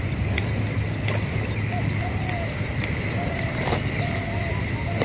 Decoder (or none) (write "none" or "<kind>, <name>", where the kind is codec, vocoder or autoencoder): vocoder, BigVGAN v2